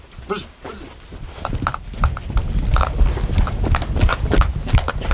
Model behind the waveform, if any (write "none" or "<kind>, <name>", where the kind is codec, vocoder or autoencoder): none